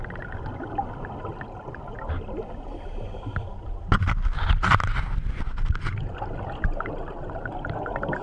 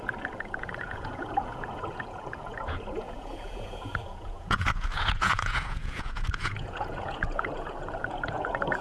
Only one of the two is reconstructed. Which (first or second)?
second